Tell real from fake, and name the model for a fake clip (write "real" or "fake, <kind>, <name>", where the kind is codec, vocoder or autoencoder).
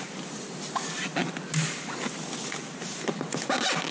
real